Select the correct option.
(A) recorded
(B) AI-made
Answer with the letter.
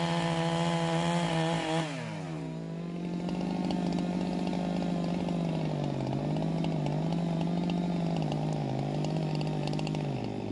A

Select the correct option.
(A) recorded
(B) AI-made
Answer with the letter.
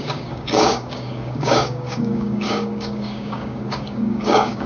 B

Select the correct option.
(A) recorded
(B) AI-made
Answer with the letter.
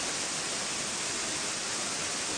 A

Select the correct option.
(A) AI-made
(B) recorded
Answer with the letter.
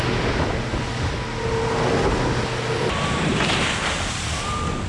B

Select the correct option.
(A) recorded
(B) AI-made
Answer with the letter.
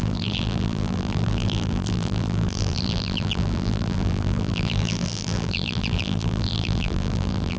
B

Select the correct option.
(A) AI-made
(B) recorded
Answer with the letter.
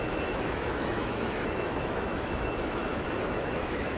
A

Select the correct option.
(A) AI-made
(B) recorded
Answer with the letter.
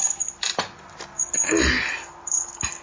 B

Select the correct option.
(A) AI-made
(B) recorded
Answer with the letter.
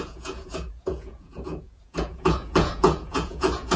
A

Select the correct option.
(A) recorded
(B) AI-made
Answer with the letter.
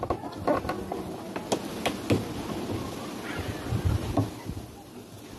A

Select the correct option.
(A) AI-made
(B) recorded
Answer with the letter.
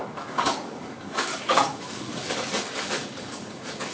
A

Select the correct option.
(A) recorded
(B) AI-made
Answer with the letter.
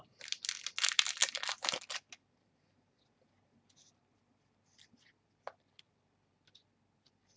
A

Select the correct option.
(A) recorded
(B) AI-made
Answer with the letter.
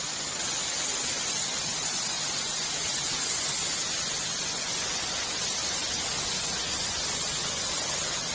B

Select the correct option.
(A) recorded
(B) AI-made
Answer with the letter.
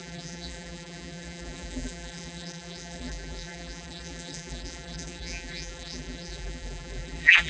B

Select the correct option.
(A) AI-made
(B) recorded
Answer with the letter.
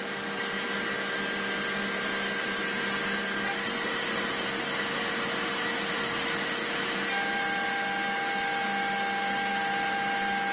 B